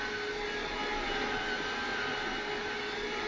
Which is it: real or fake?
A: real